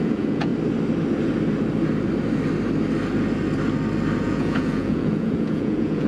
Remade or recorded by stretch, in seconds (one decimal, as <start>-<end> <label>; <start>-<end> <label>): 0.0-0.5 remade; 0.5-4.2 recorded; 4.2-6.1 remade